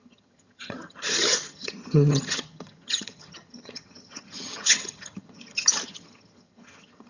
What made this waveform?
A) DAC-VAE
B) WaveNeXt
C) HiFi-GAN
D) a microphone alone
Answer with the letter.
C